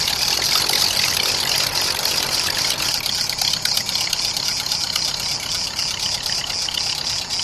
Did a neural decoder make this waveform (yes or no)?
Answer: no